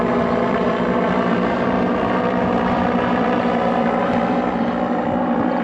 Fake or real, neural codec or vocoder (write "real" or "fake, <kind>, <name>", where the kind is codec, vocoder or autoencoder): fake, vocoder, BigVGAN v2